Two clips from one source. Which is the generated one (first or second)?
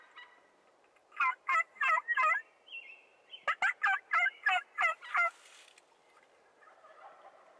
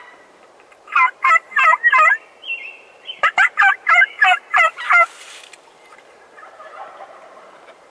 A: second